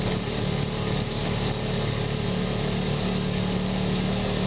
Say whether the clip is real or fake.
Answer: real